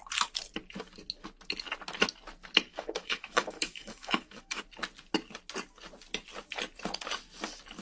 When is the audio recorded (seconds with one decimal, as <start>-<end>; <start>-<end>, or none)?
0.0-2.7; 4.6-7.8